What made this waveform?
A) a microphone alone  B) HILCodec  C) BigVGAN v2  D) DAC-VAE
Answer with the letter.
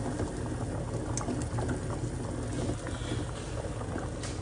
A